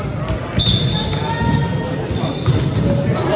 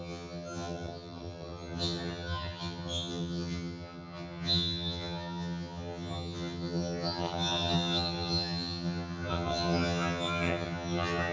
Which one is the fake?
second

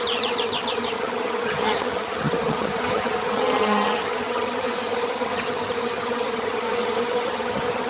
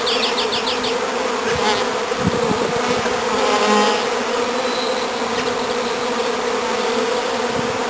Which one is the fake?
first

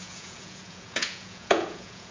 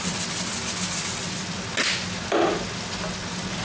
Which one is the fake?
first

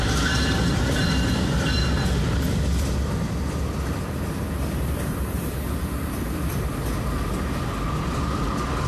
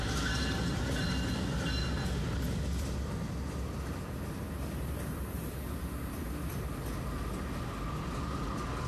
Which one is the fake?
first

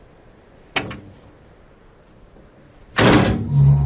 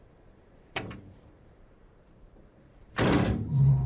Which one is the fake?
second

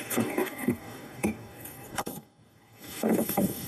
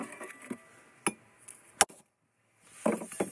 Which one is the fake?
first